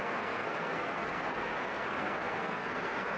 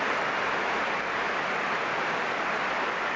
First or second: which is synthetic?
first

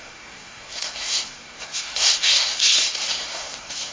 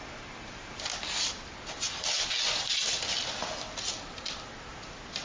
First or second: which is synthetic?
first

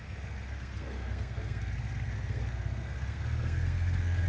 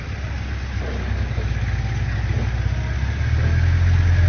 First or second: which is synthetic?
first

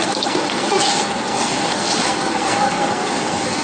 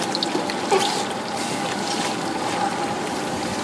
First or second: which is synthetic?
first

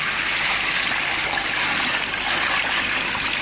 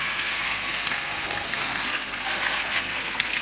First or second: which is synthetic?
second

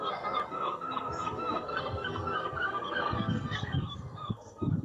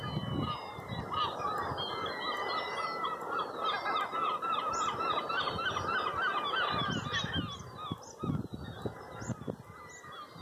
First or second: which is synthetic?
first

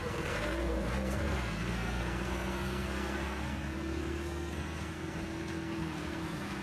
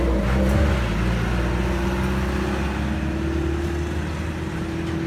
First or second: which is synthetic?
first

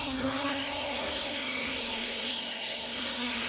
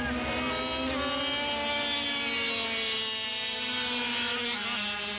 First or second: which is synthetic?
first